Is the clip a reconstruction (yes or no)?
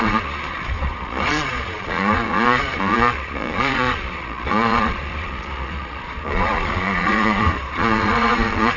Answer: yes